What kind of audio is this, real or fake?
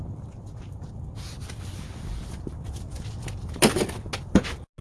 real